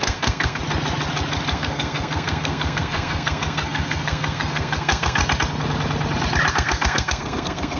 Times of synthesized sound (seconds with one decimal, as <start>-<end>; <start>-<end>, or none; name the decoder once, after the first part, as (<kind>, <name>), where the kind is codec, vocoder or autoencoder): 0.0-0.6 (codec, SNAC); 1.5-5.2; 6.5-7.8